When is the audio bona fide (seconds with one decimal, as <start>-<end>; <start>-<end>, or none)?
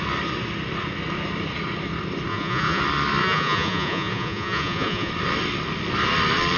0.0-2.3; 2.8-3.2; 5.1-6.6